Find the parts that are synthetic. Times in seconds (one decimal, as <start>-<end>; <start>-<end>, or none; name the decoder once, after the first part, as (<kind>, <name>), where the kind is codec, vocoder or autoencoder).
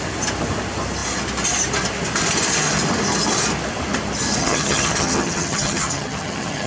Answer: 4.4-6.7 (vocoder, HiFi-GAN)